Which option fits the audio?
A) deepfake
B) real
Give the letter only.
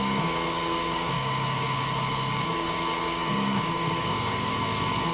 A